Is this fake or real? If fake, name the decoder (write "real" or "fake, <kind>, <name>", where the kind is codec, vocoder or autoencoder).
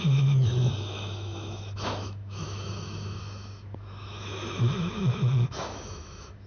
fake, autoencoder, DAC-VAE